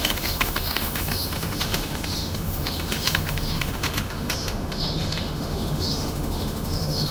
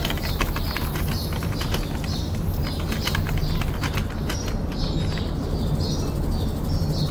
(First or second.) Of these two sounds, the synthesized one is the first